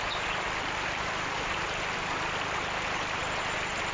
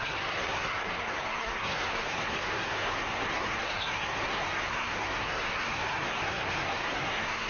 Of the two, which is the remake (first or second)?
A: second